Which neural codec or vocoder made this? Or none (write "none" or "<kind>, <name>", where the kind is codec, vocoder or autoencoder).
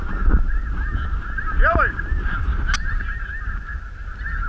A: none